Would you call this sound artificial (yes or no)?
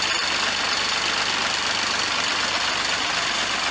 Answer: no